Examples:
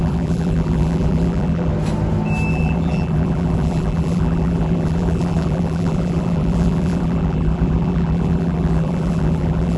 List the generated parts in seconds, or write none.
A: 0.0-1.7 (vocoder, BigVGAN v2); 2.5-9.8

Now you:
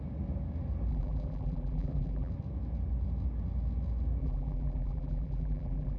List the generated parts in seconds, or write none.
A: 0.9-2.3 (vocoder, BigVGAN v2); 4.2-6.0

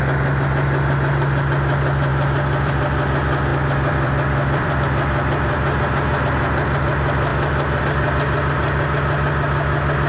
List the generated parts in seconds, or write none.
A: 2.1-2.7 (vocoder, BigVGAN v2); 3.5-4.7

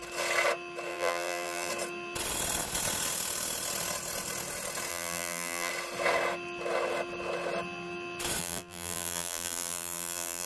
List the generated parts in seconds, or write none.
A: 0.9-1.7 (vocoder, BigVGAN v2); 4.9-5.7; 8.4-10.5